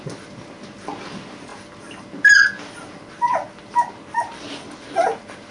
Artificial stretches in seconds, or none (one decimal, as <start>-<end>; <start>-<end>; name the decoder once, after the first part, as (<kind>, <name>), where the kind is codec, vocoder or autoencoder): none